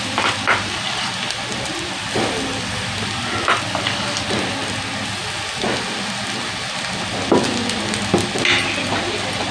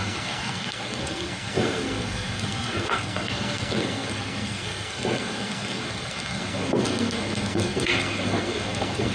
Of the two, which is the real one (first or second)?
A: first